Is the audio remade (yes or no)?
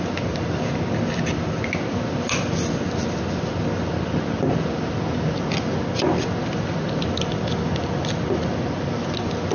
no